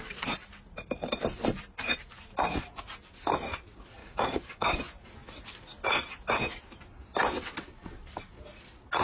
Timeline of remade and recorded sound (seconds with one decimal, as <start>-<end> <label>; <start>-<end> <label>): 0.0-4.0 recorded; 4.0-4.8 remade; 4.8-9.0 recorded